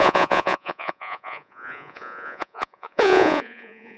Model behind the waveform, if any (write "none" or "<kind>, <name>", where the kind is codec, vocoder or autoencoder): vocoder, Vocos